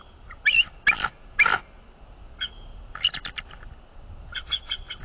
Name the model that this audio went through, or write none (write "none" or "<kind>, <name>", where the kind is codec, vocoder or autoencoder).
none